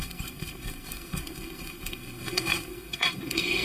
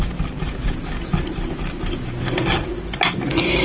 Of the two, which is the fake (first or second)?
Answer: first